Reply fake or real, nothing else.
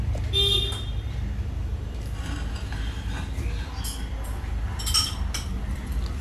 real